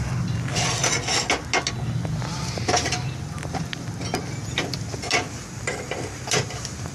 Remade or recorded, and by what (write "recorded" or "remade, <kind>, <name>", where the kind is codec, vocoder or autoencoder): recorded